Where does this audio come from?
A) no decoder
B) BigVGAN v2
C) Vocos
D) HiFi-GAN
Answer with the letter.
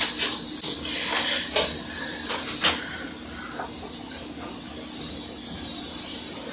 A